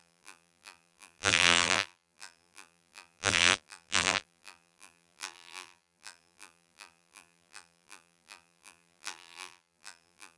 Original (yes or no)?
no